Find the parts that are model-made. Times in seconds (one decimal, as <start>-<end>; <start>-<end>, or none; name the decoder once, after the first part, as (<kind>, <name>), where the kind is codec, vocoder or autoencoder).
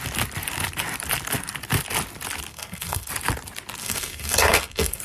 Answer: 2.5-3.1 (codec, SNAC); 3.8-5.0